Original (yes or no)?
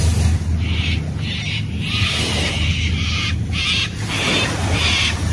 yes